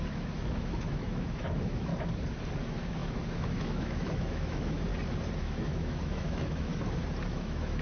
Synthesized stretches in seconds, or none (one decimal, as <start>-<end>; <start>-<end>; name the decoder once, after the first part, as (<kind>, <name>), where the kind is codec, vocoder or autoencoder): 0.0-1.9 (autoencoder, DAC-VAE); 2.6-4.9; 5.4-6.7; 7.3-7.8

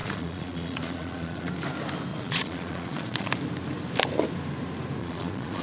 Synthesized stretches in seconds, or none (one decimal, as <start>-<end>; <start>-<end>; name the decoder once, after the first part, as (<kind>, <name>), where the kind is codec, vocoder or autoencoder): 0.0-1.5 (vocoder, Vocos); 2.1-3.3; 5.0-5.6

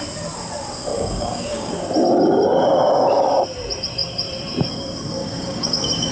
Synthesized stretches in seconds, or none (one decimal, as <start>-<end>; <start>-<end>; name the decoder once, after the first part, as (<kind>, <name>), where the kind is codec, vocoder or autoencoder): 0.9-1.7 (codec, DAC); 5.2-6.1